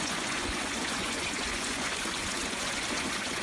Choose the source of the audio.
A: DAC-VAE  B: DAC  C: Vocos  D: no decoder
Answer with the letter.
C